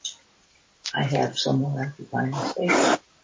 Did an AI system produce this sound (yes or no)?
no